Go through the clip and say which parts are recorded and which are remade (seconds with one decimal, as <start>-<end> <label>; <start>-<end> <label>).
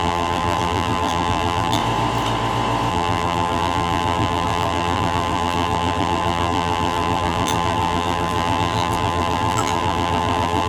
0.0-1.8 remade; 1.8-2.9 recorded; 2.9-10.7 remade